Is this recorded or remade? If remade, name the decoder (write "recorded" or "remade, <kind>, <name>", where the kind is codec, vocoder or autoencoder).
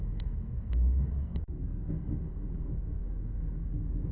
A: remade, codec, SNAC